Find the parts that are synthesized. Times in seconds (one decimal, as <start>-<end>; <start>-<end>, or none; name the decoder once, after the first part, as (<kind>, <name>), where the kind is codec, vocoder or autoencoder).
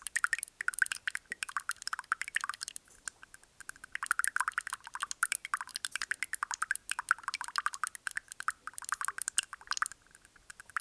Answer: none